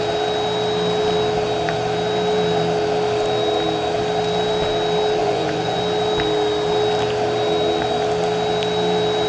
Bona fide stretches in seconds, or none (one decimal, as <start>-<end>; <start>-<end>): 0.0-5.2; 5.8-9.3